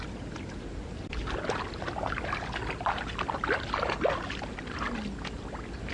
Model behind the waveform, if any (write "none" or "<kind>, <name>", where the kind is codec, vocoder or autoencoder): none